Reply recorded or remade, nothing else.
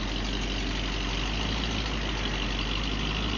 recorded